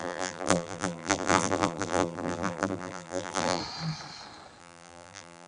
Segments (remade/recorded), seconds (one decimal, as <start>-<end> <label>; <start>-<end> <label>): 0.0-3.6 remade; 3.6-4.6 recorded; 4.6-5.5 remade